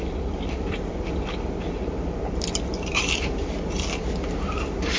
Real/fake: fake